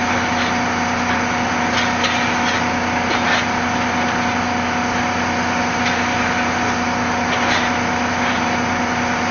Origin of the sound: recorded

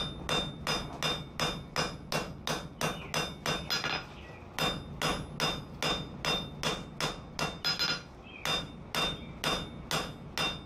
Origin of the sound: recorded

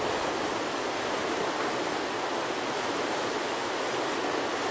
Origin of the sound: recorded